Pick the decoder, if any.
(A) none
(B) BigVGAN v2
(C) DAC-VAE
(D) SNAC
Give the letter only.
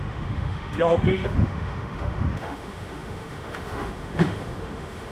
C